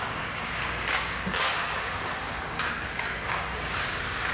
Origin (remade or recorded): remade